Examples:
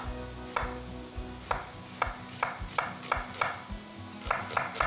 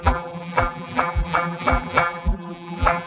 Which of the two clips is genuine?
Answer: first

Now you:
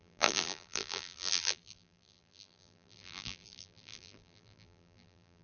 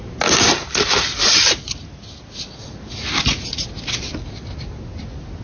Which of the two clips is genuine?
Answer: second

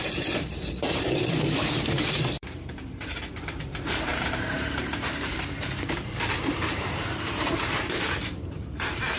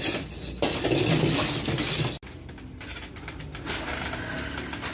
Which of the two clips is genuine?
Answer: second